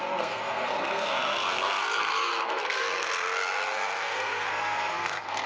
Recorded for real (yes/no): no